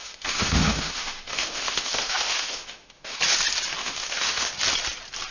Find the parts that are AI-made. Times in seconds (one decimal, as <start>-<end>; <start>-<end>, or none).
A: 0.0-3.2; 3.8-4.5